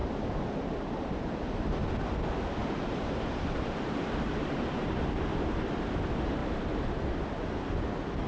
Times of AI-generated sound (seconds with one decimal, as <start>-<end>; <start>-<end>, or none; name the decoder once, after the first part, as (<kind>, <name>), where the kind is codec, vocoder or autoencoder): 0.0-1.3 (vocoder, BigVGAN v2); 2.6-5.2; 6.4-6.9